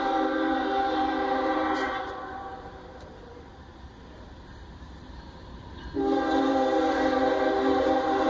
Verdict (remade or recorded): remade